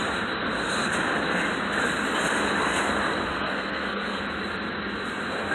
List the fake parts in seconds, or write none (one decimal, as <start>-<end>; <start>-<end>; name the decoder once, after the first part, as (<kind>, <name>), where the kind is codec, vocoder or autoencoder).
3.3-4.2 (codec, SNAC)